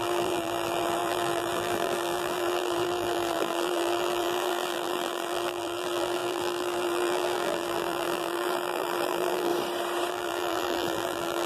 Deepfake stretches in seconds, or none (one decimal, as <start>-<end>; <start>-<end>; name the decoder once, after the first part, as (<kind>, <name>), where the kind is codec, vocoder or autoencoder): 0.0-9.5 (vocoder, BigVGAN v2); 10.1-11.5